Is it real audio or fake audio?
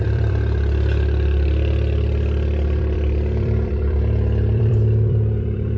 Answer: fake